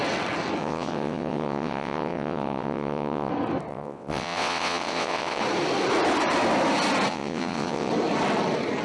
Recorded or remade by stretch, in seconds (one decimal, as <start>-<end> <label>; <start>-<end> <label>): 0.0-0.6 recorded; 0.6-3.3 remade; 3.3-3.7 recorded; 3.7-5.4 remade; 5.4-7.1 recorded; 7.1-7.9 remade; 7.9-8.8 recorded